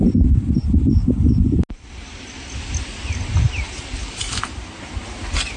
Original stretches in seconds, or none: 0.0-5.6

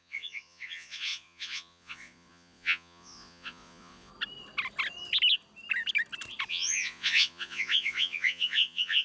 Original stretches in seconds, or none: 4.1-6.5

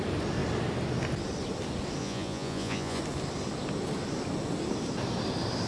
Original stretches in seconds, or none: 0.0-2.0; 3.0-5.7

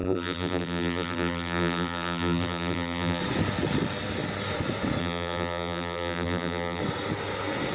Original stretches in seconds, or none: 3.2-5.0; 6.8-7.7

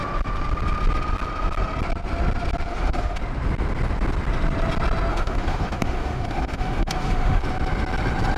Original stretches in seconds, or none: 0.0-2.7; 3.2-5.1; 7.4-8.4